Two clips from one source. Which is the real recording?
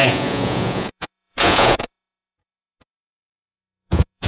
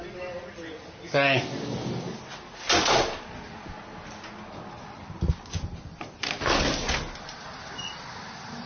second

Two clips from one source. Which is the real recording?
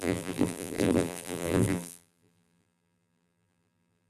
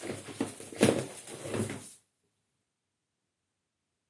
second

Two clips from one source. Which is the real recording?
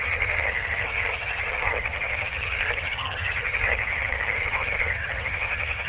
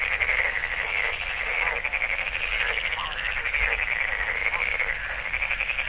second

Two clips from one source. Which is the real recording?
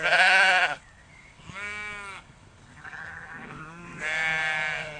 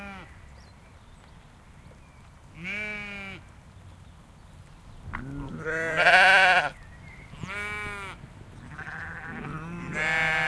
second